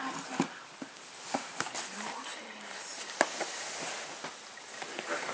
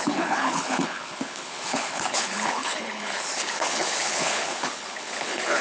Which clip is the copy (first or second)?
second